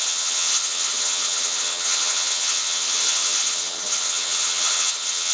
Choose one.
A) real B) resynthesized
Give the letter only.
B